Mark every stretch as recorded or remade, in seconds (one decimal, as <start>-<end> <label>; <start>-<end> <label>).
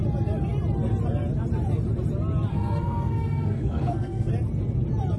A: 0.0-2.5 recorded; 2.5-4.3 remade; 4.3-5.2 recorded